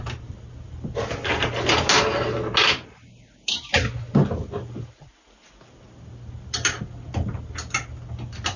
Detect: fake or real real